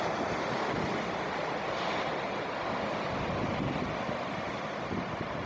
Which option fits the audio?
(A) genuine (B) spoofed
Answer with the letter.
A